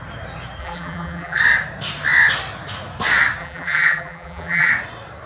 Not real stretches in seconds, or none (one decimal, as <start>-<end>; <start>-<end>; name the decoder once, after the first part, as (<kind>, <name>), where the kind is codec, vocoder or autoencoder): 0.6-1.4 (vocoder, BigVGAN v2); 3.4-4.7